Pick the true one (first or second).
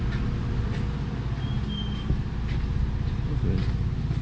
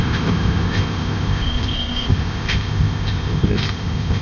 first